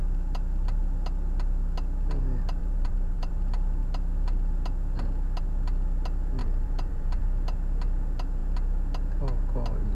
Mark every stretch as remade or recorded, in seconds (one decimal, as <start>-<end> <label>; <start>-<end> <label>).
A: 0.0-2.6 recorded; 2.6-3.3 remade; 3.3-6.4 recorded; 6.4-7.2 remade; 7.2-9.9 recorded